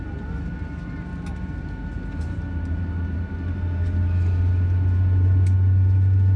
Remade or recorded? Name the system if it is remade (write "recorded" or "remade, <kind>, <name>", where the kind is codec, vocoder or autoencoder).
recorded